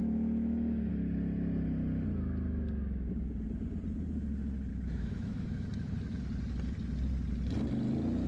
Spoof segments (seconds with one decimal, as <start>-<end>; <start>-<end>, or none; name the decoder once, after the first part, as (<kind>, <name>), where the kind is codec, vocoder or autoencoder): 0.0-0.9 (autoencoder, DAC-VAE); 4.7-6.2